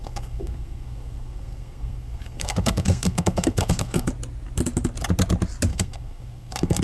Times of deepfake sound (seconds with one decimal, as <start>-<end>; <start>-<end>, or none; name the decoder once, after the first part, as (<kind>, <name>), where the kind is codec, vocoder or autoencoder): 0.0-4.1 (codec, SNAC); 5.7-6.8